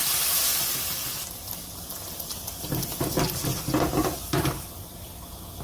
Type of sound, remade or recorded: recorded